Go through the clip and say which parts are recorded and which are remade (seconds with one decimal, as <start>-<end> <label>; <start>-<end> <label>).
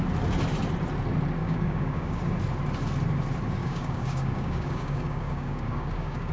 0.0-1.4 recorded; 1.4-2.2 remade; 2.2-3.6 recorded; 3.6-6.3 remade